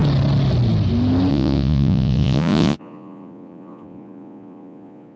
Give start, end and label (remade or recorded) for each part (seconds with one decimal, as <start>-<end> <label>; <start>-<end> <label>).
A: 0.0-1.3 recorded; 1.3-5.2 remade